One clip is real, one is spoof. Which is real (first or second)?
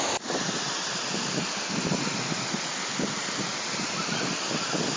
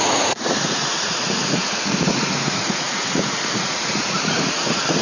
first